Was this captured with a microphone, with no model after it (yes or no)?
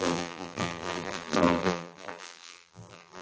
no